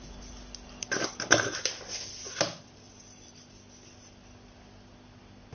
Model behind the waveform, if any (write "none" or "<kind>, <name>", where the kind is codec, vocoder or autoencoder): none